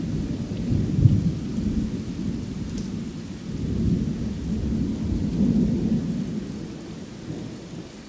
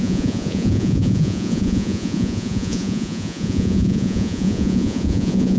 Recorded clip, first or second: first